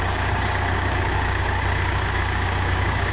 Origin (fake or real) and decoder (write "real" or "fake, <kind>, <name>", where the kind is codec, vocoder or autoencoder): fake, codec, DAC